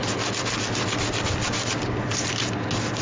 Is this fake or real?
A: real